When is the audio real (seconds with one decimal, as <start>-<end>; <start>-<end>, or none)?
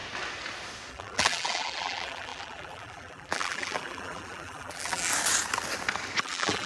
0.0-0.9; 5.1-6.2